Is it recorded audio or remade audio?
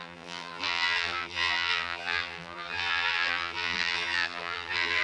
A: remade